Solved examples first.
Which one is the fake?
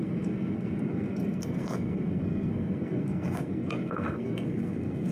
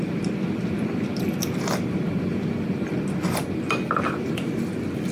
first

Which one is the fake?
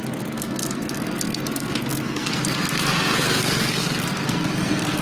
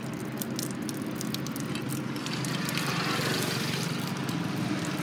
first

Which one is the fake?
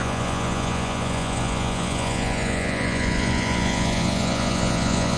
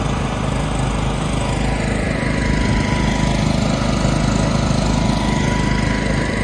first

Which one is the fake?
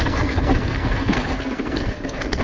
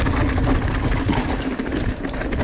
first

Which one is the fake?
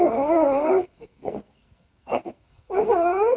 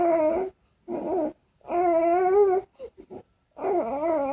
first